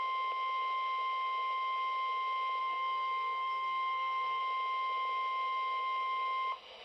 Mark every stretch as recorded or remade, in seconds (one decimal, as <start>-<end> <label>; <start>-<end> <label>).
0.0-2.6 recorded; 2.6-4.4 remade; 4.4-6.8 recorded